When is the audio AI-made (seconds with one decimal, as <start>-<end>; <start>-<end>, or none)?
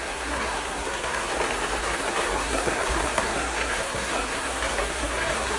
0.0-1.3; 1.8-5.6